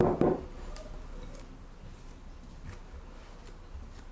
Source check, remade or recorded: recorded